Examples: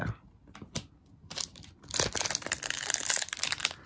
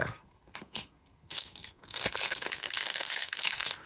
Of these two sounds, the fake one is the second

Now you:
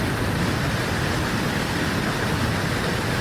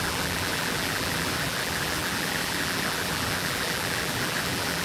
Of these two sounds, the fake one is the second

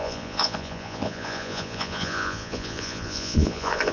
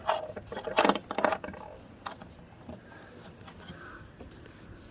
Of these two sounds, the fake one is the first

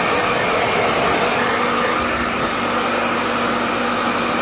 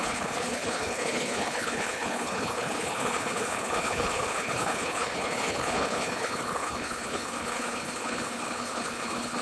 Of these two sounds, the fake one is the second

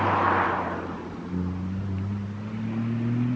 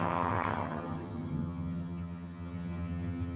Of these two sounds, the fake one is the second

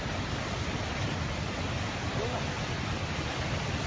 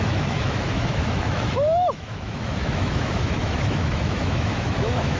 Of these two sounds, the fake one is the second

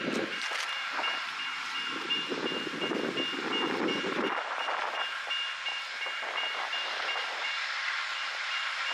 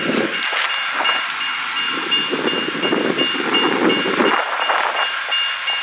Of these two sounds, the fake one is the first